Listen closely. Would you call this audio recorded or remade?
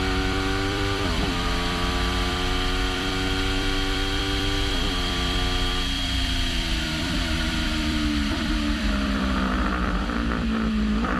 remade